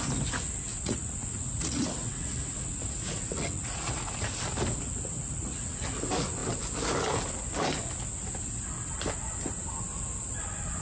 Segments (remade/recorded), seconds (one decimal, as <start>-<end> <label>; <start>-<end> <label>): 0.0-0.7 recorded; 0.7-4.1 remade; 4.1-5.2 recorded; 5.2-5.8 remade; 5.8-10.8 recorded